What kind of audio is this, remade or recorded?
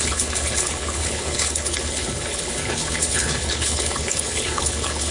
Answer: remade